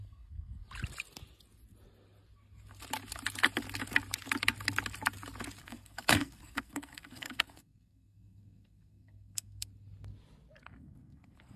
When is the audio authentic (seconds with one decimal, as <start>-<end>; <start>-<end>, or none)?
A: 0.6-5.6; 9.7-10.6